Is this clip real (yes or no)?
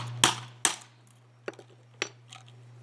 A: yes